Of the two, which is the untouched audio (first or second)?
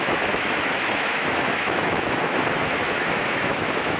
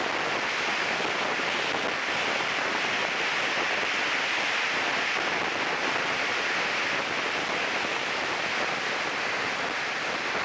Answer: second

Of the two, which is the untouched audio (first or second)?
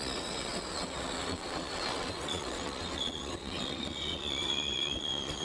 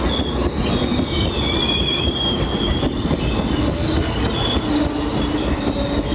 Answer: second